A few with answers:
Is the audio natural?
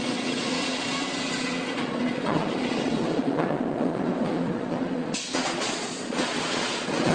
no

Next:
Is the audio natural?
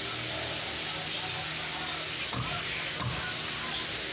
yes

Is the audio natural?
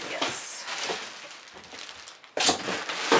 yes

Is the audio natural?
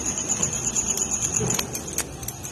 yes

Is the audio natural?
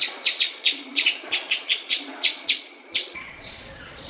no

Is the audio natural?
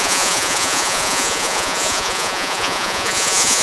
no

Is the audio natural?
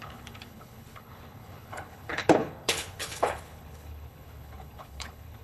no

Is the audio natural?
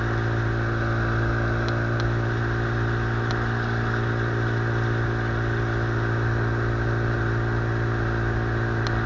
yes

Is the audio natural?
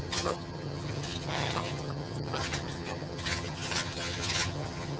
no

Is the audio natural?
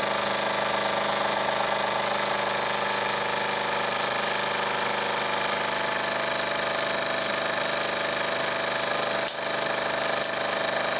yes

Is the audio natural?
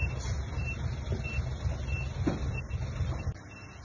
yes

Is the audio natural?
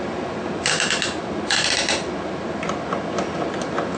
yes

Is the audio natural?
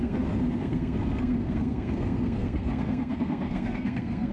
no